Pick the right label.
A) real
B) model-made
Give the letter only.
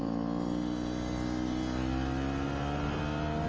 A